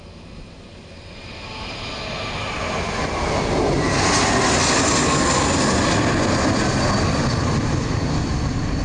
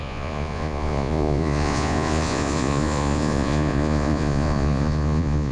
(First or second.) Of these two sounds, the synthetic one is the second